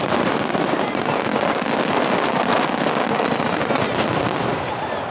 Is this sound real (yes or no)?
yes